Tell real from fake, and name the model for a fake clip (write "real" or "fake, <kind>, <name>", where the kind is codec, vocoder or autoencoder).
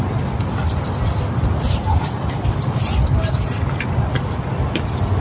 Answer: real